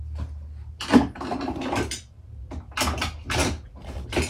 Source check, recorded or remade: recorded